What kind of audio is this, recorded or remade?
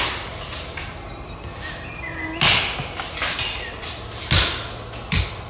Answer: recorded